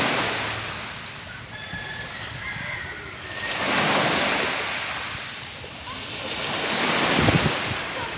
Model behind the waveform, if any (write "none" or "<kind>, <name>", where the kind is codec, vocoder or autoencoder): none